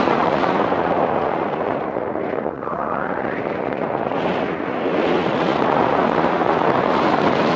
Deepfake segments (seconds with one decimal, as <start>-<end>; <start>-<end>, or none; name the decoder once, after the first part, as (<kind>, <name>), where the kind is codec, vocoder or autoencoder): 0.0-7.6 (vocoder, Vocos)